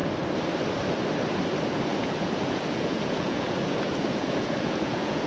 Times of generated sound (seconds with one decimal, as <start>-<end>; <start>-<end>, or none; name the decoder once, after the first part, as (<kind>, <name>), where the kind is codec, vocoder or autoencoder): 1.9-5.3 (vocoder, Vocos)